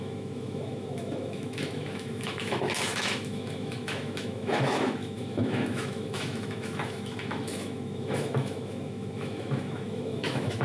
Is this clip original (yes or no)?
no